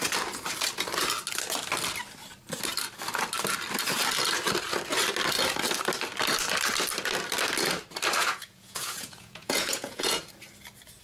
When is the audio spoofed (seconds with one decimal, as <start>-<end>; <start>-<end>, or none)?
8.2-10.2